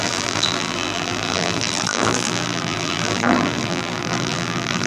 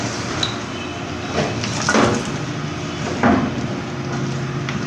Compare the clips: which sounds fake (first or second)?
first